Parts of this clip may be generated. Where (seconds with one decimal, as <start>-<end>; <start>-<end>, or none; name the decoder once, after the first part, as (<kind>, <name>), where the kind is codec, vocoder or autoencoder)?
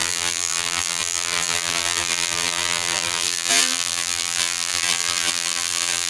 0.0-6.1 (vocoder, BigVGAN v2)